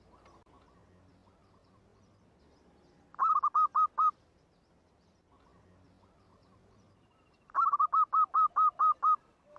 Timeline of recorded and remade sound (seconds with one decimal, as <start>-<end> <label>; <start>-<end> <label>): 0.0-6.3 recorded; 6.3-7.8 remade; 7.8-9.6 recorded